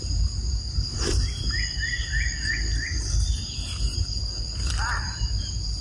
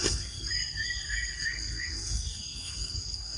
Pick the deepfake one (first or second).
second